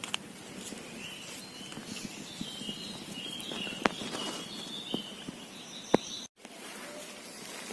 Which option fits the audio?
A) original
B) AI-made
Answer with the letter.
A